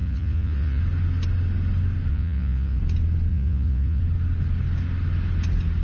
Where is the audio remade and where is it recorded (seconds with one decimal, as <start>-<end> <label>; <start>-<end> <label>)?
0.0-0.8 remade; 0.8-2.1 recorded; 2.1-2.8 remade; 2.8-3.3 recorded; 3.3-4.0 remade; 4.0-5.8 recorded